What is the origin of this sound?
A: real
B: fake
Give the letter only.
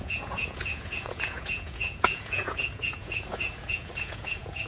B